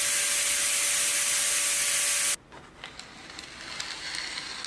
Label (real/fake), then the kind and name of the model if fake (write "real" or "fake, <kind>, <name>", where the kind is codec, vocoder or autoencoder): real